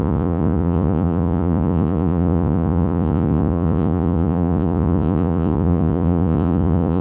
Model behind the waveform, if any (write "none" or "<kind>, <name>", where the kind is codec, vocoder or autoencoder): vocoder, Vocos